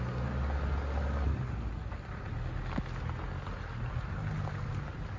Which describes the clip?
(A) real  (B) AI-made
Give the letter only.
A